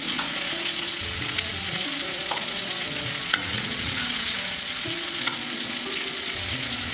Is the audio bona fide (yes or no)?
no